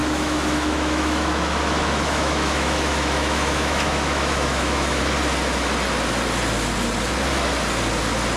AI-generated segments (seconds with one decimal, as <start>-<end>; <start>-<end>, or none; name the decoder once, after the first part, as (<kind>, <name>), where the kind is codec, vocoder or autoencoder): 0.0-5.0 (autoencoder, DAC-VAE)